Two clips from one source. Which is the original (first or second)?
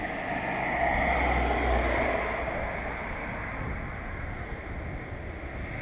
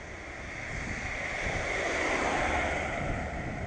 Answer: first